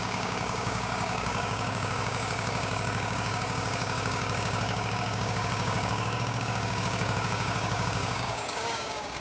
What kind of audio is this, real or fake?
fake